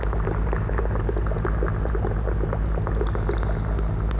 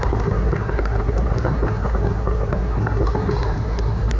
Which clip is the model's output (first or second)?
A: second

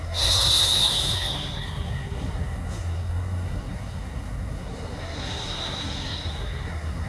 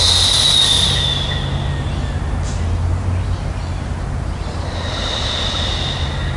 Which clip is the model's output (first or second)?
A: first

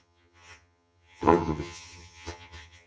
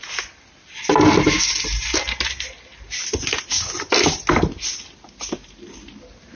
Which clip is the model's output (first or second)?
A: first